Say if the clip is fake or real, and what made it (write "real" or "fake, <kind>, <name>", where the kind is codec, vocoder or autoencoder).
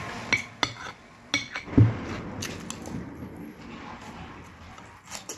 real